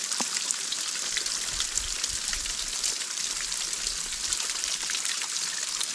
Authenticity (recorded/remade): recorded